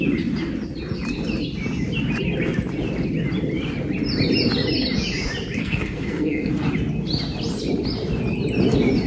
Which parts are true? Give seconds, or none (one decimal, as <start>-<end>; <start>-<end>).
0.0-5.6; 6.5-9.1